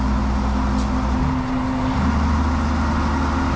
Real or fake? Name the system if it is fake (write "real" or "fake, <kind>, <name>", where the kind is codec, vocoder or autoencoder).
real